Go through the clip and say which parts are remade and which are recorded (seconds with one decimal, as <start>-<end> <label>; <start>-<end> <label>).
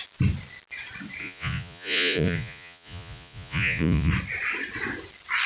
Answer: 0.0-1.2 recorded; 1.2-4.1 remade; 4.1-5.5 recorded